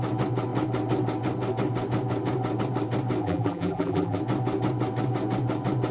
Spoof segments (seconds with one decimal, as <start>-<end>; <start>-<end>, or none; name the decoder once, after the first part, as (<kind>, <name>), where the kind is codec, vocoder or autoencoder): 3.2-4.2 (vocoder, BigVGAN v2)